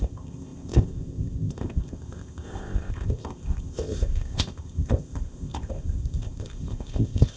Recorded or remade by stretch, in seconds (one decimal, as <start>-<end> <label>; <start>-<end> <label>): 0.0-7.4 remade